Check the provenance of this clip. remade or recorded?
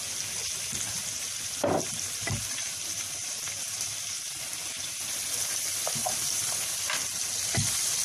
recorded